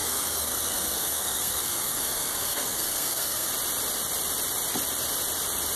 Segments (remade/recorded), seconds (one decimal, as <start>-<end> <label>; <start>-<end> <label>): 0.0-3.5 remade; 3.5-5.8 recorded